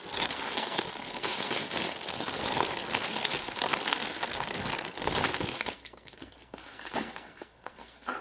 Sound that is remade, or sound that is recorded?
remade